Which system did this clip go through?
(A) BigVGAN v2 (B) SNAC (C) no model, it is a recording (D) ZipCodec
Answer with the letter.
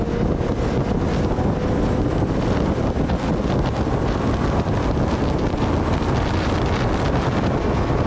C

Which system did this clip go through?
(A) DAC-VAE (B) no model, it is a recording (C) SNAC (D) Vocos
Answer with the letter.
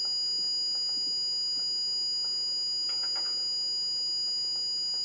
B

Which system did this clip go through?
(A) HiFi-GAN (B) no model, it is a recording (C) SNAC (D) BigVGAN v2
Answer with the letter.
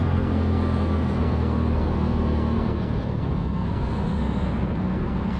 C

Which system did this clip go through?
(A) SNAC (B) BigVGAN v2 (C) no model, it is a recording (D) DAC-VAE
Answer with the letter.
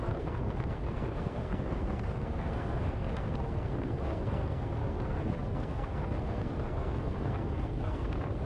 A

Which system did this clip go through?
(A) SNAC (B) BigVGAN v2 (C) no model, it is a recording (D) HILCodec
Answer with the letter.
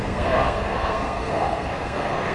A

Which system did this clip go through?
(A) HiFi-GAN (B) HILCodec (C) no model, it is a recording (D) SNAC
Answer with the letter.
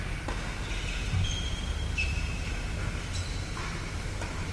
C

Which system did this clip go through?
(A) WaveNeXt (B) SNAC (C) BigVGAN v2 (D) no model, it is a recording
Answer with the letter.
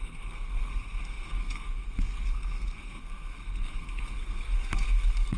B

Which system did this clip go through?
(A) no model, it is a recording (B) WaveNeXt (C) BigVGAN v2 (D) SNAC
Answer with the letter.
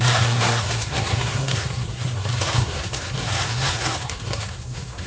D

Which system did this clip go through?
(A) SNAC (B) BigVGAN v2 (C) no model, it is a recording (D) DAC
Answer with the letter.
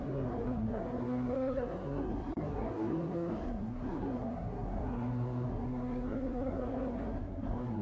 A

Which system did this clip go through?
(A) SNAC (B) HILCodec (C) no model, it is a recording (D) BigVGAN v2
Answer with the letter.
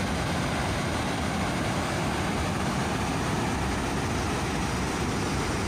C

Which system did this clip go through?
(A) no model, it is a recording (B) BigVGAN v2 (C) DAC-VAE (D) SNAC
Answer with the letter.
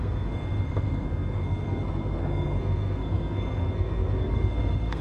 D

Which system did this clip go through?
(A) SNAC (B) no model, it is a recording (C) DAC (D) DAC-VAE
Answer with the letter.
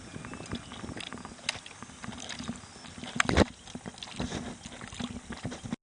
B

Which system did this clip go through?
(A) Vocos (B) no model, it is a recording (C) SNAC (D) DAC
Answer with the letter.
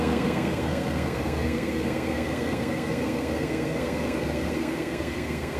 C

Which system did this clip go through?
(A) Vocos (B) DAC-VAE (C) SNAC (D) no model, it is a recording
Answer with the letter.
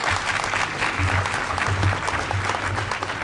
D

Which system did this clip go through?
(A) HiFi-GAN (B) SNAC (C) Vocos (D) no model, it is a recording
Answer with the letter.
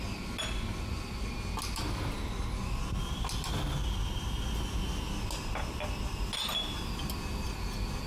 D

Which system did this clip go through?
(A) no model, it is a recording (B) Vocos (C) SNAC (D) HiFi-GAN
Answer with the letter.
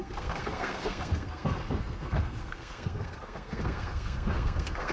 C